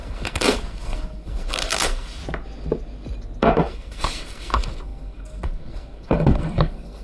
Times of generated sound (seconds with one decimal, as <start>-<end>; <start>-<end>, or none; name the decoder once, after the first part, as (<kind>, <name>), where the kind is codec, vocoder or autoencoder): 0.0-2.2 (codec, SNAC); 3.4-7.0